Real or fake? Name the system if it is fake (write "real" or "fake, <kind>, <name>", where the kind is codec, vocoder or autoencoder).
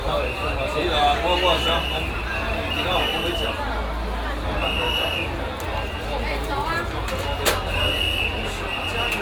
real